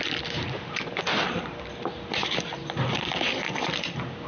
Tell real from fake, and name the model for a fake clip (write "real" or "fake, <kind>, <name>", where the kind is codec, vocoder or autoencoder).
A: real